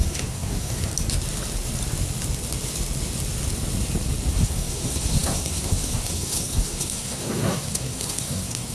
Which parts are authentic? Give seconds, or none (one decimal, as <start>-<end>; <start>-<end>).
0.9-4.3

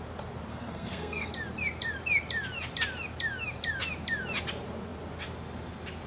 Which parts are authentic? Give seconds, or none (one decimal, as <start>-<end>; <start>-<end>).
0.0-0.5; 1.3-6.1

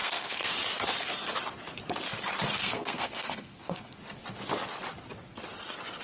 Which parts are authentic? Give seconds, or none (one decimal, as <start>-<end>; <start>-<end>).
0.5-2.5; 4.0-6.0

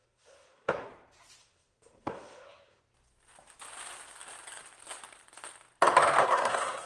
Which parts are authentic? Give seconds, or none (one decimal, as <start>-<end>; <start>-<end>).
0.9-1.4; 2.8-6.2

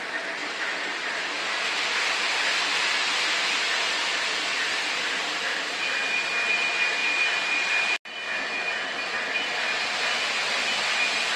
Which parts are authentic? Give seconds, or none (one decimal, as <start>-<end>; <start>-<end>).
0.0-11.4